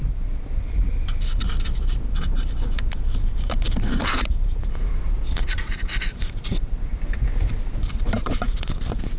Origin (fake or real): fake